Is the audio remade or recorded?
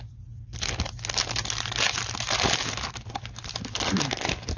recorded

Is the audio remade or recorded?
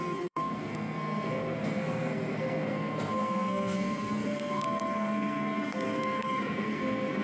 remade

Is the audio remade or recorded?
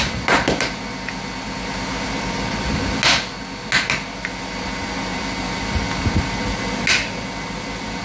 recorded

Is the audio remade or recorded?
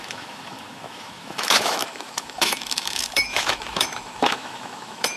remade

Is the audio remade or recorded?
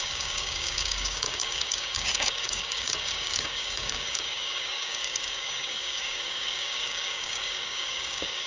remade